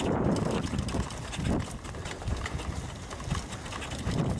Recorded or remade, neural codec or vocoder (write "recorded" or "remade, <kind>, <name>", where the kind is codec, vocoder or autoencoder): recorded